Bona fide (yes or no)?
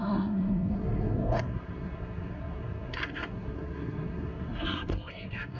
no